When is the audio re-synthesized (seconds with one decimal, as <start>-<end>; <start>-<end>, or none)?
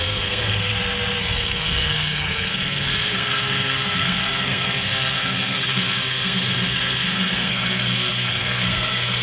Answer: 0.0-0.7; 1.2-9.2